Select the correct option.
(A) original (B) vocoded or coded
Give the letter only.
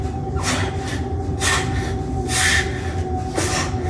A